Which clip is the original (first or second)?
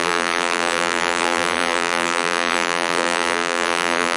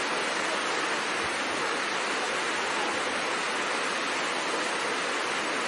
second